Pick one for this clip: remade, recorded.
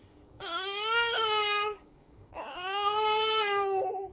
remade